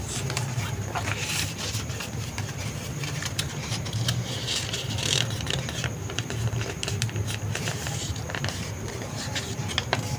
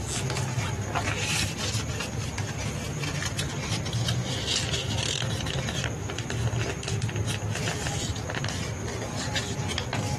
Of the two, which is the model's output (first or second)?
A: first